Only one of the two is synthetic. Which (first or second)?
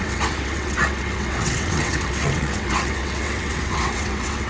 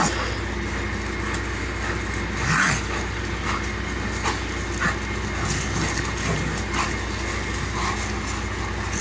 first